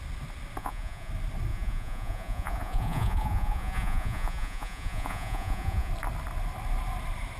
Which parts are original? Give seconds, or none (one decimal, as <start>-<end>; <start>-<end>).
0.0-0.6; 1.1-1.5; 5.9-7.4

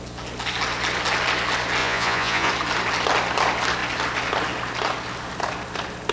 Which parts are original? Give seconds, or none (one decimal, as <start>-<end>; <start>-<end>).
0.0-1.8; 2.5-6.1

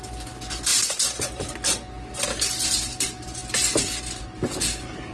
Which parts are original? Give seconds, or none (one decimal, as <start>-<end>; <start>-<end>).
0.0-5.1

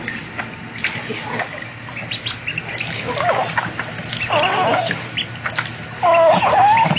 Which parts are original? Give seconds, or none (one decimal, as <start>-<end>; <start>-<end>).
0.0-7.0

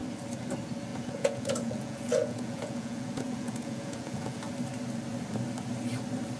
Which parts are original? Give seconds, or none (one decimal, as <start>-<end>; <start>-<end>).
0.0-0.9; 4.5-6.4

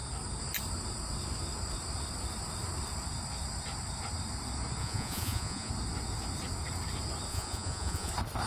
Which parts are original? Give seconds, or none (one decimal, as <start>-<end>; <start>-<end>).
0.0-4.8; 5.7-7.3; 8.1-8.5

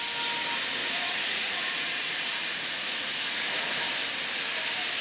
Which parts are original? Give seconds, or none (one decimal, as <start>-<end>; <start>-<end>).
0.0-0.8; 3.8-5.0